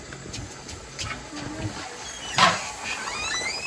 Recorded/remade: recorded